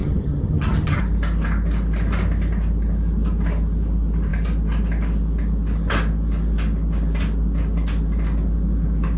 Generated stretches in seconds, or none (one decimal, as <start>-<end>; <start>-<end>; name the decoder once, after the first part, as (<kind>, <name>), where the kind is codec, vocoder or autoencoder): 0.0-1.0 (vocoder, HiFi-GAN)